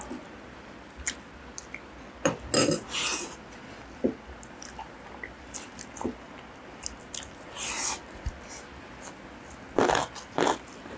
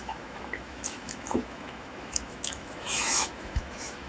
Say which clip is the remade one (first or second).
second